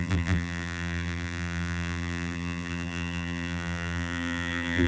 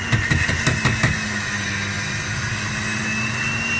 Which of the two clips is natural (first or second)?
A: second